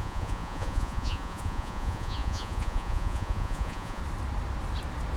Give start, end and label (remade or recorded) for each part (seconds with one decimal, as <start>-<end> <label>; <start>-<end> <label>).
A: 0.0-4.0 remade; 4.0-5.2 recorded